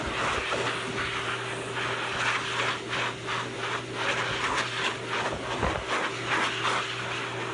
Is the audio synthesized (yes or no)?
no